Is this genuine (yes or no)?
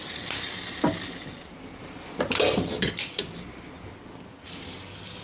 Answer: yes